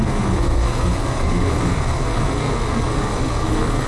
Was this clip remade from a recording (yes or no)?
yes